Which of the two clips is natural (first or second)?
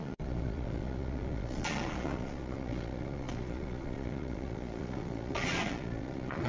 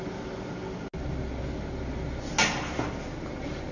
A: second